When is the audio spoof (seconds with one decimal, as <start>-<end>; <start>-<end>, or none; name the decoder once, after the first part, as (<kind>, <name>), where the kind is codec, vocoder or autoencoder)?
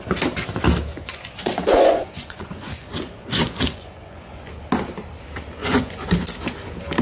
0.9-4.5 (vocoder, Vocos); 5.6-6.2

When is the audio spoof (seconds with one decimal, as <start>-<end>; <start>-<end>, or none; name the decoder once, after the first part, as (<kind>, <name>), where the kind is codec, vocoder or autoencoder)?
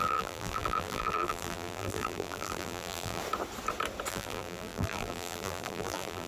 0.0-3.2 (vocoder, BigVGAN v2); 4.1-6.3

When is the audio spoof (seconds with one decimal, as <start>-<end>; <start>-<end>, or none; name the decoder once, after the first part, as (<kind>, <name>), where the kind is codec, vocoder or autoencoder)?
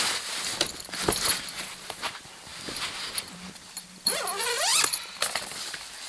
1.5-2.1 (vocoder, Vocos)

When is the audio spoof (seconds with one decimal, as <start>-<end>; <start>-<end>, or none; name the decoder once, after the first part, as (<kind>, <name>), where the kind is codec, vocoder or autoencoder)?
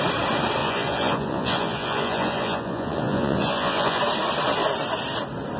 0.6-4.0 (vocoder, Vocos)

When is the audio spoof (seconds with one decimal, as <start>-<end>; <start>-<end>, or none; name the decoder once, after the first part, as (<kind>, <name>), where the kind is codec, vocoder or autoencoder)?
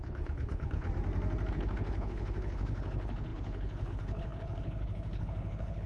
0.0-0.9 (codec, HILCodec); 1.5-5.9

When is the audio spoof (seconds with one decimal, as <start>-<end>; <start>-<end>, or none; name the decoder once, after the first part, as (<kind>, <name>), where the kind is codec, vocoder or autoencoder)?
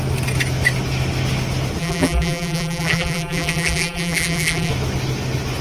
1.8-4.7 (vocoder, BigVGAN v2)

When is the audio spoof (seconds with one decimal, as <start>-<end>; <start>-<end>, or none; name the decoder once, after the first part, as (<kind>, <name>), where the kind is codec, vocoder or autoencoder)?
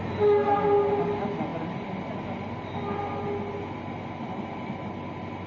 none